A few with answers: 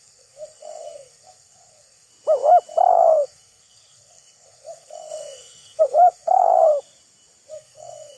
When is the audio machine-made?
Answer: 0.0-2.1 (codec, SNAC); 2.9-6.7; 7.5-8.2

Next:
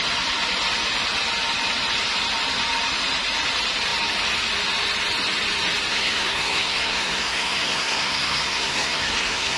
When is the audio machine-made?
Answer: 5.9-9.6 (codec, SNAC)

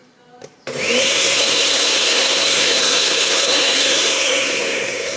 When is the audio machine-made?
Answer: 1.0-5.2 (codec, SNAC)